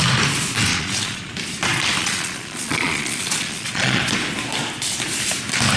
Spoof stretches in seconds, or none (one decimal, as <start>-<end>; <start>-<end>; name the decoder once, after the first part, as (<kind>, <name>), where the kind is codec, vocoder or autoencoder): 0.7-1.3 (vocoder, Vocos); 2.0-4.0